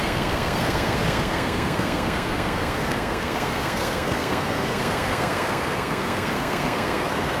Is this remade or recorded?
remade